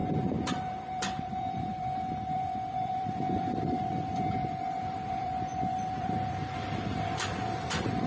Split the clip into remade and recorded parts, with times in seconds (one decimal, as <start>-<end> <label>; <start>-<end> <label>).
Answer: 0.0-5.5 remade; 5.5-6.0 recorded; 6.0-8.1 remade